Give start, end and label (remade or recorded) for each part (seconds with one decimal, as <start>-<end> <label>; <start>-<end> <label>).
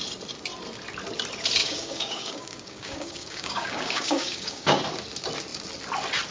0.0-1.6 recorded; 1.6-4.8 remade; 4.8-6.3 recorded